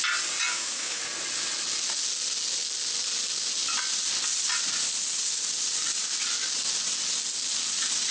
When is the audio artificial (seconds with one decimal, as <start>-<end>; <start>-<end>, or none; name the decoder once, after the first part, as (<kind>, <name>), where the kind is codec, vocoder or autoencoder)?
0.5-1.0 (autoencoder, DAC-VAE)